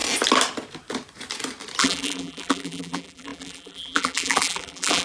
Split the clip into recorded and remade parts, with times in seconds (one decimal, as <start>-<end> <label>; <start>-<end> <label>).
0.0-1.8 recorded; 1.8-5.0 remade